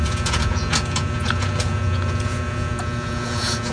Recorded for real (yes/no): no